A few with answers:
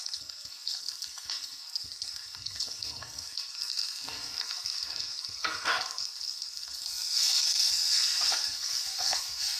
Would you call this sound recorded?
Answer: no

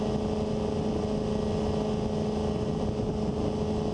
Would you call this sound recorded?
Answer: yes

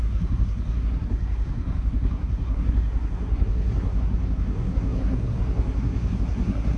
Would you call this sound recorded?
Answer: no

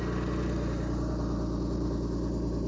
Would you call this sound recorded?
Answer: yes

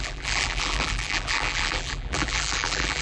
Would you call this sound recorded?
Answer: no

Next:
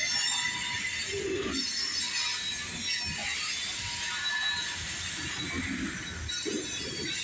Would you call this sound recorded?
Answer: yes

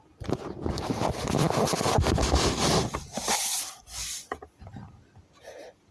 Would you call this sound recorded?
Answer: yes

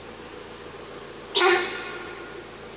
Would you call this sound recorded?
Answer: yes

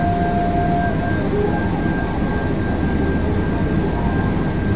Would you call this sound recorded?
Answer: yes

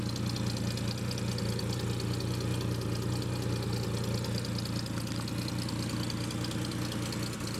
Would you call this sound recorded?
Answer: yes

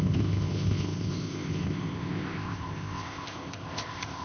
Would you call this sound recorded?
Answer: no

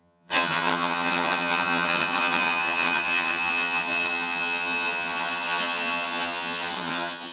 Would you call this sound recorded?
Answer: no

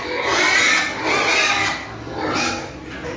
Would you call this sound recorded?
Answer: yes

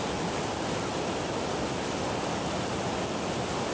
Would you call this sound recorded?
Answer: yes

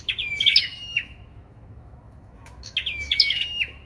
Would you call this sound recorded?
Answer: no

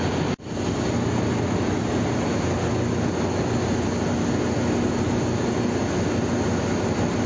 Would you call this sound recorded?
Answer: yes